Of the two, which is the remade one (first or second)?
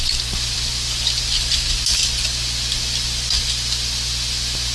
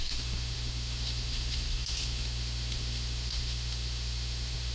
second